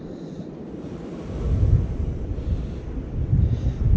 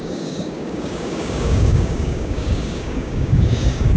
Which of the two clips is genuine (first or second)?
first